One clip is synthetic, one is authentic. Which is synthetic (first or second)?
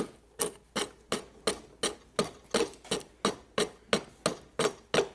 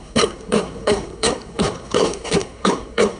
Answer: second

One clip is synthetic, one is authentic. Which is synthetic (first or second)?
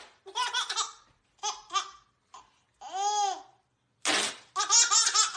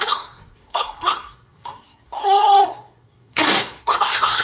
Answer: second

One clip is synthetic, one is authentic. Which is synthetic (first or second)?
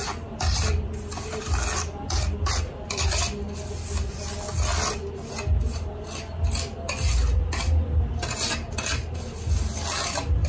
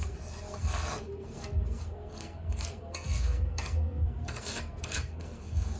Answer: second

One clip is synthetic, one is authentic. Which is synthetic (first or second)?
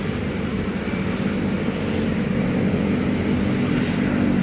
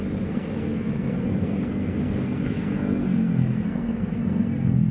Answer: second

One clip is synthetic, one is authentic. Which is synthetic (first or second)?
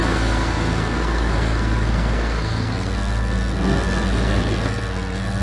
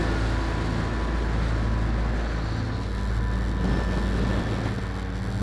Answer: first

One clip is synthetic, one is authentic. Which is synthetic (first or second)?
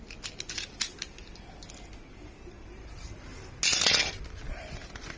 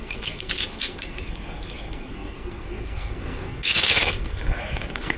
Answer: second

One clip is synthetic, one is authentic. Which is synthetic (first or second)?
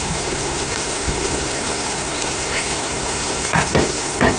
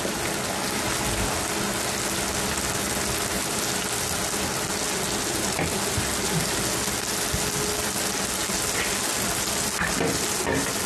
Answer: first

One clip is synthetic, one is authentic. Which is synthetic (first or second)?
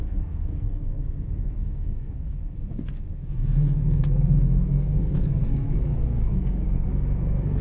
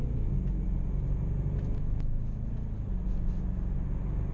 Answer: first